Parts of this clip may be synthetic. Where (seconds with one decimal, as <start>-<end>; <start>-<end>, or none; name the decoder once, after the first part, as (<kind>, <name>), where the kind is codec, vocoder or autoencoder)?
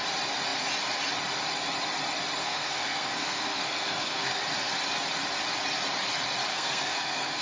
2.4-4.4 (codec, SNAC); 6.5-7.4